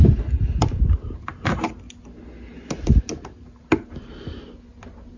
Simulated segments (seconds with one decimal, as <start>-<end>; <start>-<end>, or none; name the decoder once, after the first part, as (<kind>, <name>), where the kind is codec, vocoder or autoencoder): none